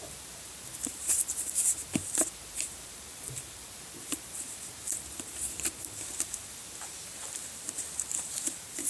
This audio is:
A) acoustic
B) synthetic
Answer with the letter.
B